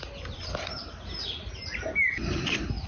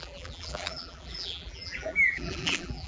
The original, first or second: first